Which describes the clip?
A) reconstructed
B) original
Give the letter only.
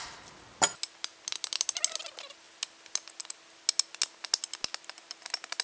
B